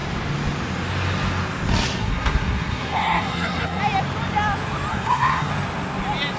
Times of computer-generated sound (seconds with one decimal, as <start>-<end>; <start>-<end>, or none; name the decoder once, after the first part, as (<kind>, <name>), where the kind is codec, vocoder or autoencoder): 2.0-3.8 (codec, SNAC); 4.9-5.5